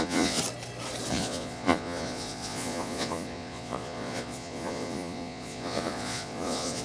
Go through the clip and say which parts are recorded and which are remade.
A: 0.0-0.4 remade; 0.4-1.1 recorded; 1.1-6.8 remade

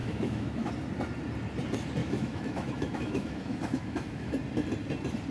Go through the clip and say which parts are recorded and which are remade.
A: 0.0-0.7 remade; 0.7-2.0 recorded; 2.0-4.3 remade; 4.3-5.3 recorded